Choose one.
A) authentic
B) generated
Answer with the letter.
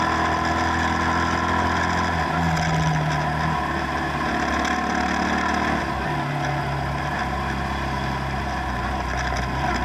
A